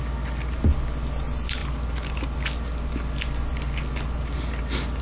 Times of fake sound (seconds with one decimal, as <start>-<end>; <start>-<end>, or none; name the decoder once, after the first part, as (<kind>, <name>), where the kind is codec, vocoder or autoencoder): none